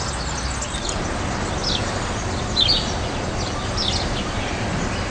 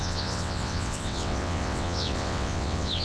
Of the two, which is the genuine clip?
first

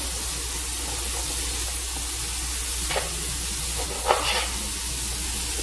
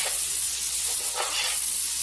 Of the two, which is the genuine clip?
first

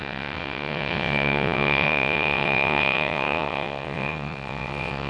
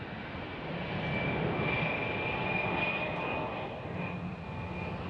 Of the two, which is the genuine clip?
second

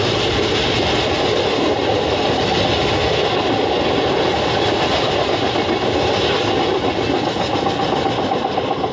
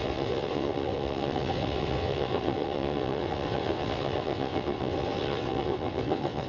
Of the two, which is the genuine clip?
first